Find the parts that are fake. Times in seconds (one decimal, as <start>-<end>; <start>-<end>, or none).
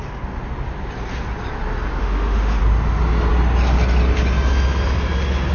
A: 2.0-2.6